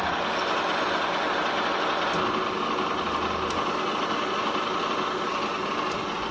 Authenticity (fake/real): real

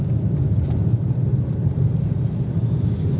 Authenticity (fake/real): real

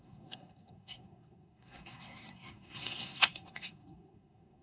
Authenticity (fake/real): fake